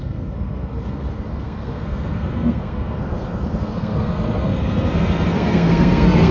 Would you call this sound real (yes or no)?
no